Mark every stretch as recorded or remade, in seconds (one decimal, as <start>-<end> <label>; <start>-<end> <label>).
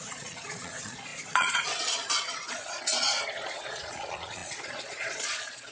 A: 0.0-5.7 remade